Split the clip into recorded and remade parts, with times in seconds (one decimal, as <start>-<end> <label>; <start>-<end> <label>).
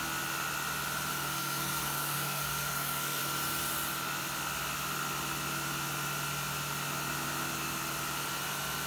0.0-1.1 recorded; 1.1-3.2 remade; 3.2-8.9 recorded